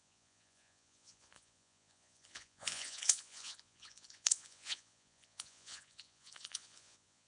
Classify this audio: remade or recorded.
remade